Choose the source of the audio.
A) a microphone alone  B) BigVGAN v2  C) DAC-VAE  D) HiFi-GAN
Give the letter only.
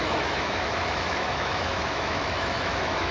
C